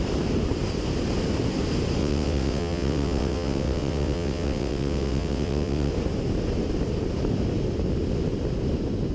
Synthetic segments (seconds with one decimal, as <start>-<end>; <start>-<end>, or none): 2.0-5.9